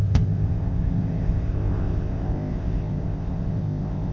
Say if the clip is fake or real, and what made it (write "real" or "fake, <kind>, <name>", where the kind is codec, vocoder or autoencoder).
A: fake, codec, ZipCodec